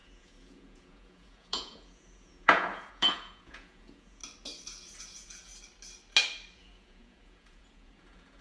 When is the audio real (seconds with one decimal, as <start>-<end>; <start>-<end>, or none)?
4.2-5.0; 5.5-6.5